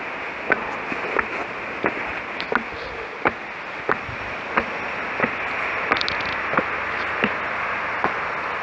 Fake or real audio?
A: real